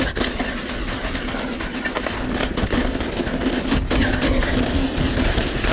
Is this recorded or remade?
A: recorded